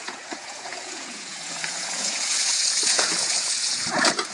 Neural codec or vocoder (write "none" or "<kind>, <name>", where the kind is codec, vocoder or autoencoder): vocoder, Vocos